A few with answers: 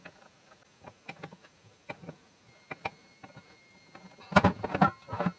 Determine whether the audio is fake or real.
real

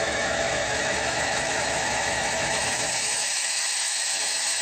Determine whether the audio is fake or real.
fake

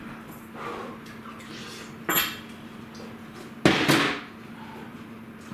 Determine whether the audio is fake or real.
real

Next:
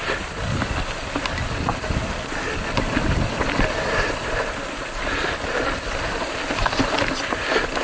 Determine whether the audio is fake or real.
real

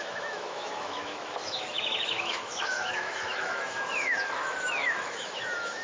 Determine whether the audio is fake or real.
fake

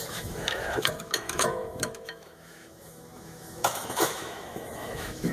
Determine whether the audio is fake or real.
fake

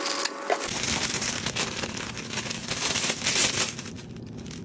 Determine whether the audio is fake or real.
real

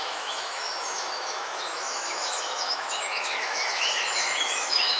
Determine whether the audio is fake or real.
fake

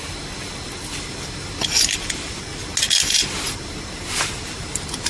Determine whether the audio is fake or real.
real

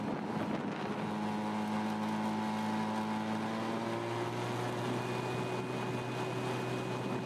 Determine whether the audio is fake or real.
real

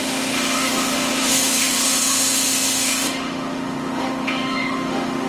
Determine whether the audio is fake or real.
fake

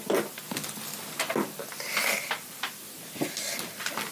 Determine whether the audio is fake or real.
real